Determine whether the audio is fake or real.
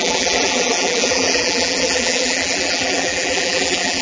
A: fake